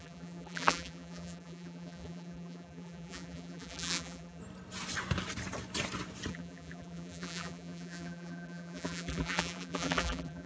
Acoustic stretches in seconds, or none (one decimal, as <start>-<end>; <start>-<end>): 4.4-6.3